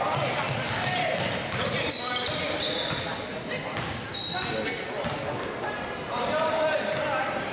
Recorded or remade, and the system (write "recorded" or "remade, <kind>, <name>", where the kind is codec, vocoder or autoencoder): recorded